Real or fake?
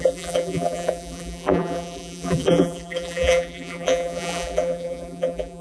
fake